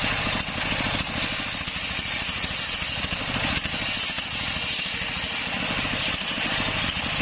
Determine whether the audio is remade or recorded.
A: recorded